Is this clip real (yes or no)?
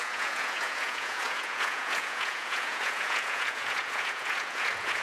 no